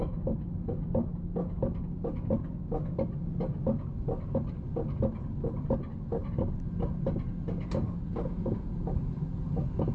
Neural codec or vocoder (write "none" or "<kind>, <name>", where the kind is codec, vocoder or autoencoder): none